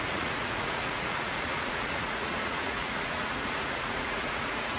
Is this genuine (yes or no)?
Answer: no